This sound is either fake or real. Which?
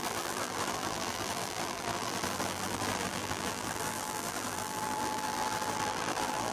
fake